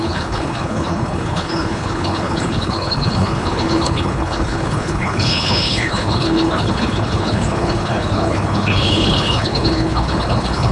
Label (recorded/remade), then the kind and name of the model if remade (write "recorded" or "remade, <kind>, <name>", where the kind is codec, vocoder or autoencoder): remade, codec, HILCodec